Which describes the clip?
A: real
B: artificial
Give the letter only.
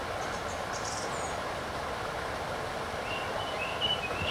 A